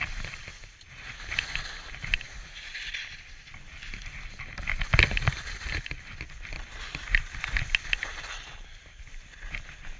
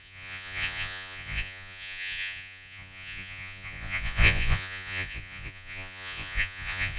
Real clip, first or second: first